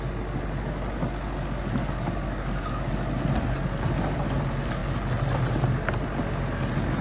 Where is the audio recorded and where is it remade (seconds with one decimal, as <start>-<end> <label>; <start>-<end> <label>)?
0.0-1.8 recorded; 1.8-2.9 remade; 2.9-7.0 recorded